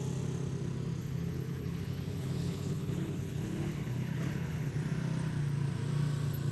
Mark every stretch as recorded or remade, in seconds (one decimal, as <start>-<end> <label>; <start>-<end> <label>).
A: 0.0-1.0 recorded; 1.0-4.7 remade; 4.7-6.5 recorded